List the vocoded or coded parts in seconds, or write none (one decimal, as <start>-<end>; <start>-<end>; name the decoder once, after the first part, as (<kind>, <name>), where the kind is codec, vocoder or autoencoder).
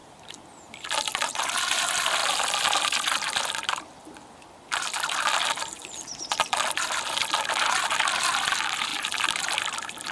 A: 0.0-2.2 (vocoder, BigVGAN v2); 4.6-5.8; 7.2-10.1